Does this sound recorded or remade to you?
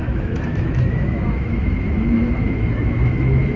remade